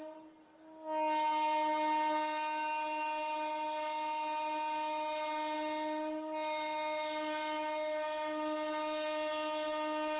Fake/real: real